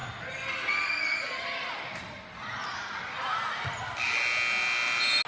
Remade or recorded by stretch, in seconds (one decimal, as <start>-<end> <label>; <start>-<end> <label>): 0.0-5.3 recorded